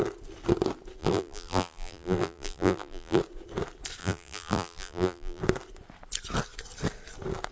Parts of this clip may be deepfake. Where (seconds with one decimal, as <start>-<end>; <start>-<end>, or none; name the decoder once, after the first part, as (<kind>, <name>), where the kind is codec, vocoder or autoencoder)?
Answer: 1.0-3.2 (vocoder, BigVGAN v2); 4.0-5.4